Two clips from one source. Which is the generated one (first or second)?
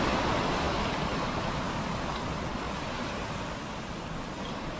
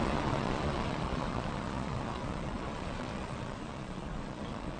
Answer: second